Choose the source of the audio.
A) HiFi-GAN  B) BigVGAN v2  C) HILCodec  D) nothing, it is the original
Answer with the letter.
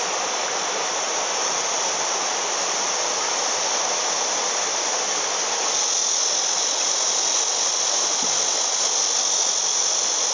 D